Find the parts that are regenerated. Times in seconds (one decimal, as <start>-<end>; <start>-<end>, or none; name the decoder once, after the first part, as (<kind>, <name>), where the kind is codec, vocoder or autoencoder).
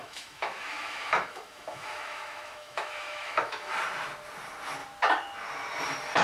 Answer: 0.0-3.7 (autoencoder, DAC-VAE)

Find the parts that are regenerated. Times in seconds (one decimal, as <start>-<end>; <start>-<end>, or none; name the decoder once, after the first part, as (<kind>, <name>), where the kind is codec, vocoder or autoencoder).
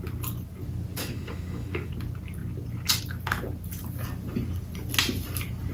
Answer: 1.0-1.9 (autoencoder, DAC-VAE)